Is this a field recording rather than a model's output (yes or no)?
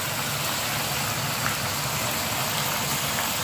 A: yes